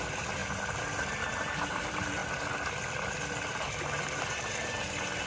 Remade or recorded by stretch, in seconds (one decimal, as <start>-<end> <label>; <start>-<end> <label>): 0.0-0.4 remade; 0.4-0.9 recorded; 0.9-2.2 remade; 2.2-3.7 recorded; 3.7-5.3 remade